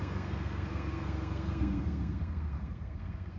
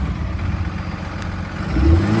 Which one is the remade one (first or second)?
first